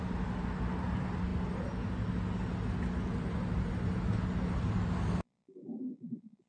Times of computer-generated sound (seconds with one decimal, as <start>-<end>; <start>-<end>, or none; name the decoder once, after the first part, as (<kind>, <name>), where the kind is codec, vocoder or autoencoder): none

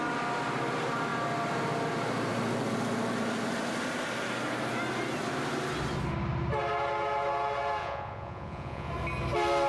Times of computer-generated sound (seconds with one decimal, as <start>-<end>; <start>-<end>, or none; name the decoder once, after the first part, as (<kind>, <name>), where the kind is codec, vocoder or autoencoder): 7.8-8.9 (vocoder, Vocos)

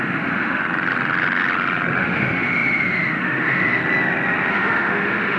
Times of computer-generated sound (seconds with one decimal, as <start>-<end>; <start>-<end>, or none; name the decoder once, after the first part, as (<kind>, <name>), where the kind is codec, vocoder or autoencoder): 0.0-0.6 (autoencoder, DAC-VAE); 2.0-3.8; 4.5-5.4

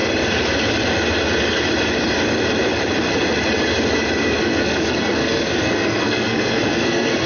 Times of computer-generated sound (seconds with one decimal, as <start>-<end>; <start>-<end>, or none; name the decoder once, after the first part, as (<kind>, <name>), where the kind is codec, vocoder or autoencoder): 4.4-7.3 (codec, SNAC)

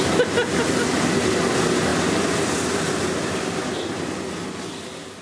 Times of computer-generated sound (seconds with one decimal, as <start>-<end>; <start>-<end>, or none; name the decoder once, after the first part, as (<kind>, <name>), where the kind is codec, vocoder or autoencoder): none

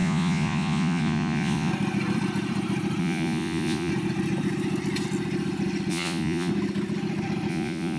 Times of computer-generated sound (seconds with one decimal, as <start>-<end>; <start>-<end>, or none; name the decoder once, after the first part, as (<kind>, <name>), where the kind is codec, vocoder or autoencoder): 0.0-1.7 (vocoder, Vocos); 3.0-3.9; 5.9-6.5; 7.5-8.0